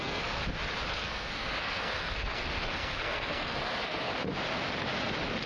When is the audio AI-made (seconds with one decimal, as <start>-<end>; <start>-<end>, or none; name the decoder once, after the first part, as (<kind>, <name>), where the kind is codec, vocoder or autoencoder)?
0.0-0.4 (codec, SNAC); 0.9-4.1

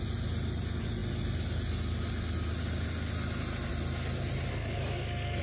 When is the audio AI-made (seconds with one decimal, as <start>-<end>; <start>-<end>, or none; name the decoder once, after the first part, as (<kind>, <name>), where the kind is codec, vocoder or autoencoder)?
4.5-5.4 (codec, SNAC)